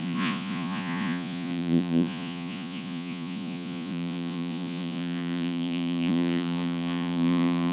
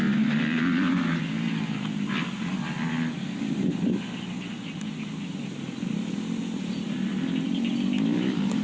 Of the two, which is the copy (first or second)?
first